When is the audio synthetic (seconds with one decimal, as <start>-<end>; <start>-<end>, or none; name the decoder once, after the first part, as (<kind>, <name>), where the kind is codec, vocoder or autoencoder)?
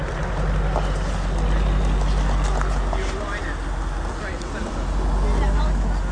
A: none